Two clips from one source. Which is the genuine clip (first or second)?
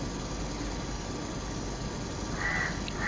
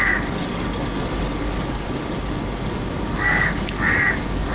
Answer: first